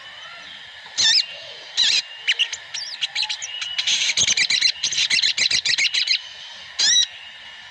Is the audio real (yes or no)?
yes